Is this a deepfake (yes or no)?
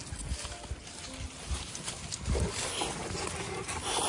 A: no